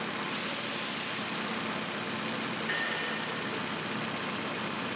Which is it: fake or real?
real